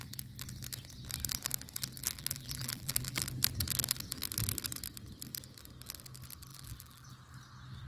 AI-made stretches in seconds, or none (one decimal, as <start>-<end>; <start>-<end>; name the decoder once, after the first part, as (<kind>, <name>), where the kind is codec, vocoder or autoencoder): 2.0-3.2 (vocoder, BigVGAN v2); 6.5-7.1